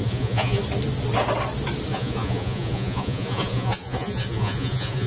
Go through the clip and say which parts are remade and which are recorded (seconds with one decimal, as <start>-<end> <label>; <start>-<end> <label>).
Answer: 0.0-0.6 remade; 0.6-1.9 recorded; 1.9-5.1 remade